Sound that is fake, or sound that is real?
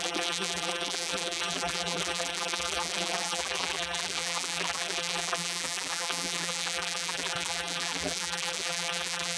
fake